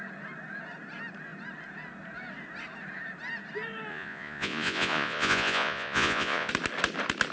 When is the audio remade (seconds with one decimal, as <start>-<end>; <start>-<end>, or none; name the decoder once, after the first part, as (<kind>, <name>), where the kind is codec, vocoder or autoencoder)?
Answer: 3.9-6.5 (vocoder, Vocos)